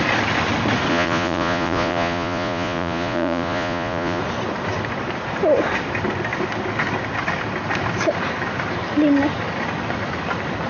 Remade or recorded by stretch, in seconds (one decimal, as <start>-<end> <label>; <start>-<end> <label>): 0.0-0.9 recorded; 0.9-4.2 remade; 4.2-10.7 recorded